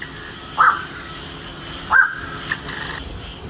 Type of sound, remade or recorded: recorded